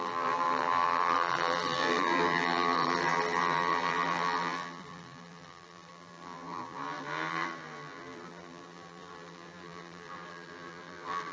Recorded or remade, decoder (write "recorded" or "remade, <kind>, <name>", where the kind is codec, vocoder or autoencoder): remade, vocoder, BigVGAN v2